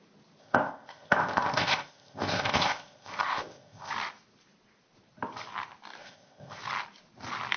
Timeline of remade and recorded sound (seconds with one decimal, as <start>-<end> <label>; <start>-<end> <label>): 0.0-0.4 recorded; 0.4-3.9 remade; 3.9-6.0 recorded; 6.0-6.6 remade; 6.6-7.6 recorded